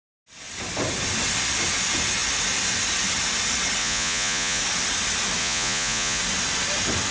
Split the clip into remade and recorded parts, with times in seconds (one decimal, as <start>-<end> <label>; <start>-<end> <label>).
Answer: 0.0-3.8 recorded; 3.8-4.6 remade; 4.6-5.4 recorded; 5.4-6.2 remade; 6.2-7.1 recorded